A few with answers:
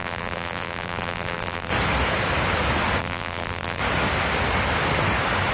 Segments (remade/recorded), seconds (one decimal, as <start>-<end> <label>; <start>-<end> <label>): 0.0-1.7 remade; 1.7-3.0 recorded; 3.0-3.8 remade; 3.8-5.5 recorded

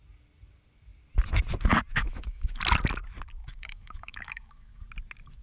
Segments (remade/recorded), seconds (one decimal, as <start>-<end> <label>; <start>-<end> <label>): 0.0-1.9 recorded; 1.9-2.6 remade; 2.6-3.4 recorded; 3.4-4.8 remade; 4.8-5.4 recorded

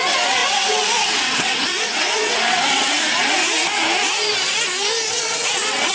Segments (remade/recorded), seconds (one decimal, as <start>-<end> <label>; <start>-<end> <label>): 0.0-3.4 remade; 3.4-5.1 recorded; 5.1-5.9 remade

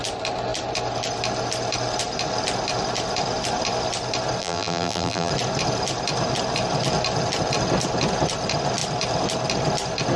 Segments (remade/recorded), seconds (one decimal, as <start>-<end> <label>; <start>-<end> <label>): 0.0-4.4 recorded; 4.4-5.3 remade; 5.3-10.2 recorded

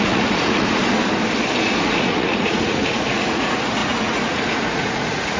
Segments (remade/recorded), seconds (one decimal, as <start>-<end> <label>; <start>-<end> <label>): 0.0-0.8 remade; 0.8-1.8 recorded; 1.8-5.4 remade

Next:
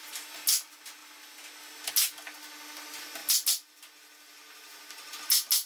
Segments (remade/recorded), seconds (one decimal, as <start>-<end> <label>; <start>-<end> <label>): 0.0-5.7 recorded

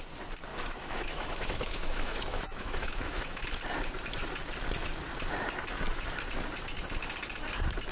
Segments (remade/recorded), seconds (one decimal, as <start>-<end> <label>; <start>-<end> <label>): 0.0-0.5 recorded; 0.5-3.4 remade; 3.4-7.9 recorded